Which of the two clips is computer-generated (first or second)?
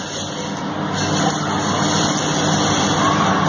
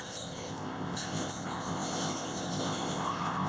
second